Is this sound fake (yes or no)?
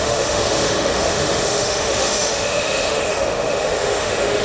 yes